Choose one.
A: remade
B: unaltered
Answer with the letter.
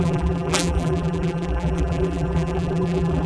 A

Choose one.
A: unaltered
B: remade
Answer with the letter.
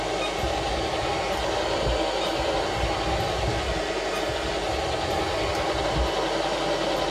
A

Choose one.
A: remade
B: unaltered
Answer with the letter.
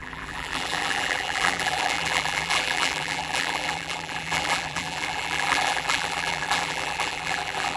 A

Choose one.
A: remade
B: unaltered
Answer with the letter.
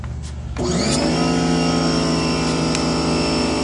B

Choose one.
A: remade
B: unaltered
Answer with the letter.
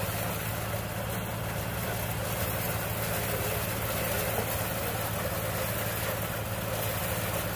B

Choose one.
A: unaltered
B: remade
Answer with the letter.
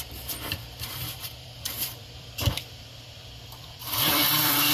B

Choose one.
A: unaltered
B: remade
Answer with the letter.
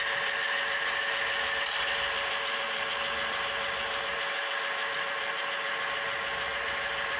A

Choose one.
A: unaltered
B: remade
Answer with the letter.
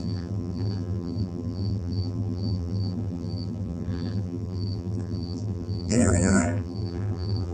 B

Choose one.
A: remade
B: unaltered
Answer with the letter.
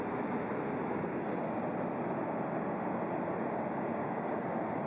B